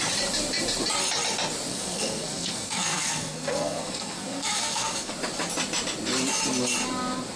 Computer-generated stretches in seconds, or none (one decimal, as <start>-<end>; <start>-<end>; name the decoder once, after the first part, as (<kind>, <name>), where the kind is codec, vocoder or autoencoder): 1.7-5.1 (codec, SNAC)